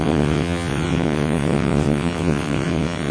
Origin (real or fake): fake